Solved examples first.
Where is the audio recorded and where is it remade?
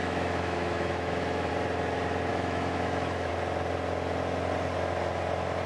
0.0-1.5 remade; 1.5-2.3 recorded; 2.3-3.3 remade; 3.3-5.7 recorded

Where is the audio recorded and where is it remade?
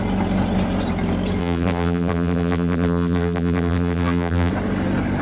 0.0-1.4 recorded; 1.4-4.5 remade; 4.5-5.2 recorded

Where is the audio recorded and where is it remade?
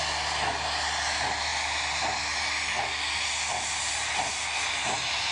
0.0-1.5 recorded; 1.5-3.1 remade; 3.1-5.3 recorded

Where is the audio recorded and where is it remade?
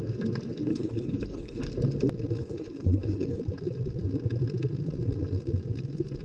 0.0-0.7 recorded; 0.7-1.6 remade; 1.6-2.4 recorded; 2.4-3.4 remade; 3.4-6.2 recorded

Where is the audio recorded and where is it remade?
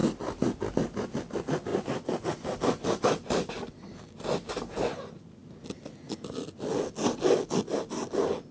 0.0-1.7 recorded; 1.7-3.5 remade; 3.5-8.5 recorded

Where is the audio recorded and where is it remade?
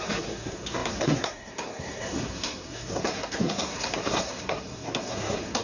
0.0-5.6 remade